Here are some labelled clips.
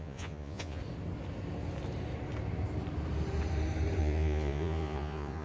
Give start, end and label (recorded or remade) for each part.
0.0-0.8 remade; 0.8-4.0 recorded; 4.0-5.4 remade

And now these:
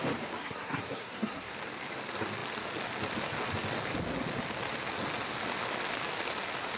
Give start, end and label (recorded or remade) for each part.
0.0-0.4 recorded; 0.4-1.5 remade; 1.5-6.8 recorded

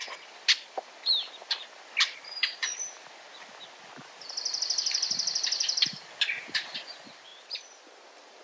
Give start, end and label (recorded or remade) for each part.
0.0-8.4 remade

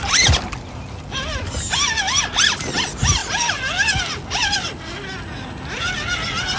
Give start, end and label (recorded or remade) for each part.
0.0-6.6 recorded